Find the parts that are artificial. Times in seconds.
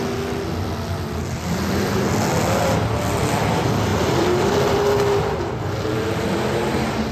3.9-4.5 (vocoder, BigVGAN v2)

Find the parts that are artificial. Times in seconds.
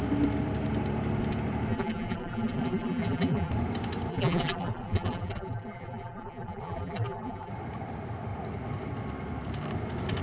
1.7-3.5 (vocoder, BigVGAN v2); 4.1-7.5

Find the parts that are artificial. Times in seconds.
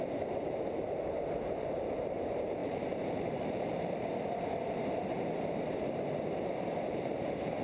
2.6-3.7 (vocoder, BigVGAN v2)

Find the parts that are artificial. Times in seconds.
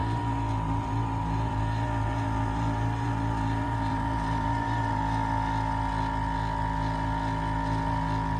0.0-5.0 (vocoder, BigVGAN v2)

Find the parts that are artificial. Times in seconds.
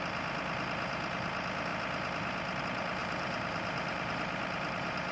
3.0-5.1 (vocoder, BigVGAN v2)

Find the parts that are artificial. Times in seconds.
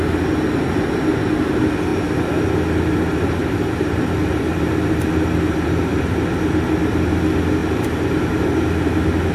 3.4-7.1 (vocoder, BigVGAN v2); 7.6-8.3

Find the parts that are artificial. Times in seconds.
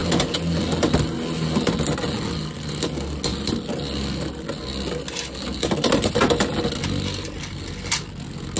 none